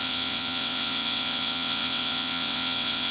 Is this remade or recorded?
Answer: remade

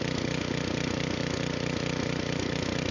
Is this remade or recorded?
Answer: recorded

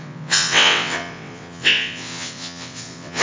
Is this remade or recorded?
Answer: remade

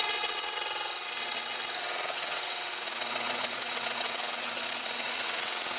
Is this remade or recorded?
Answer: remade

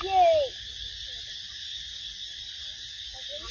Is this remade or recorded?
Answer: recorded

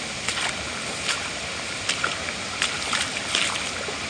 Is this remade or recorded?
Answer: recorded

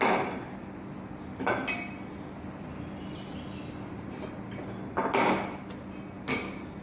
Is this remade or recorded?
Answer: recorded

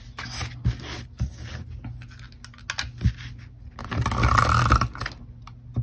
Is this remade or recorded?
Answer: recorded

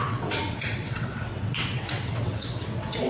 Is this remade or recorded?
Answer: remade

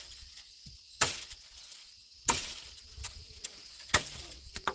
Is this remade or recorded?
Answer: remade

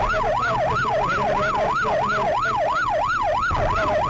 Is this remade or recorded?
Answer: recorded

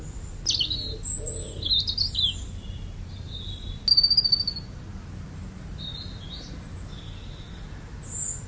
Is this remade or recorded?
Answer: recorded